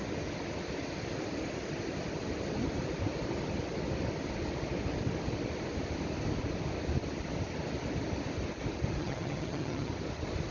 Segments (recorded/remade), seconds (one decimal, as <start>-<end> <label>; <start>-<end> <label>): 0.0-9.0 recorded; 9.0-9.9 remade; 9.9-10.5 recorded